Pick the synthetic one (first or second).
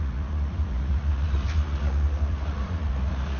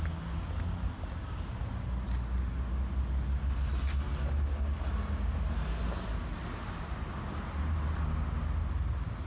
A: first